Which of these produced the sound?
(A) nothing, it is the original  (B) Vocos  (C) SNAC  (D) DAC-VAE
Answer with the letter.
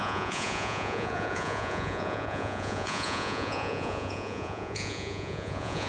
B